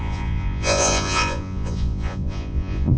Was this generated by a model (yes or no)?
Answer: yes